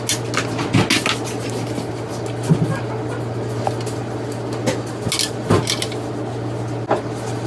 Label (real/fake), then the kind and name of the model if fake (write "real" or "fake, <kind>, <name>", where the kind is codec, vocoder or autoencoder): real